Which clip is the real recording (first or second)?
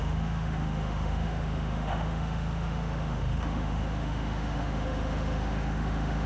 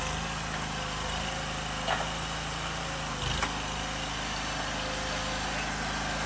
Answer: second